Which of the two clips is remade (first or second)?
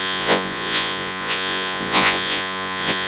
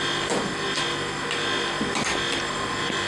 first